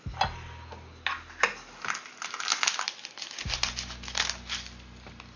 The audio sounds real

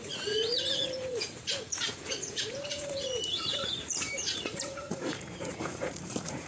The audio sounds fake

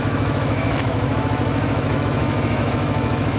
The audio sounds fake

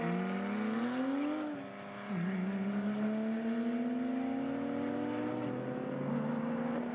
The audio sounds real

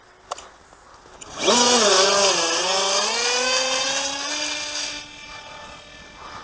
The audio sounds real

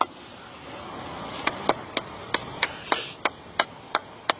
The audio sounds real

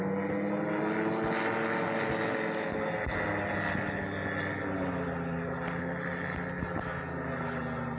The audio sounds real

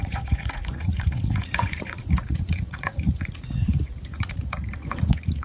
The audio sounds fake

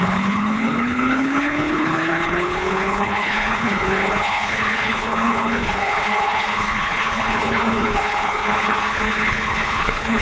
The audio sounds fake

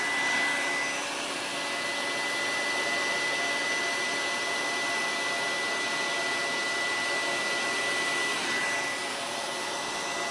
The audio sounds real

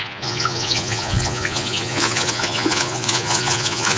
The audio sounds fake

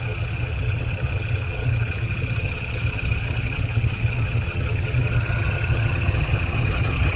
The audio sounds fake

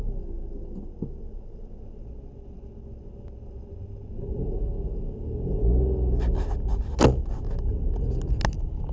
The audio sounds real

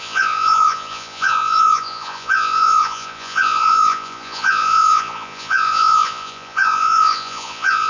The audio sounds fake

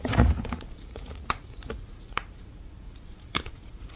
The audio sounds fake